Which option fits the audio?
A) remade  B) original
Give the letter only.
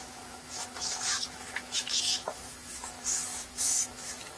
A